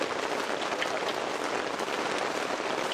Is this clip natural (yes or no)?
yes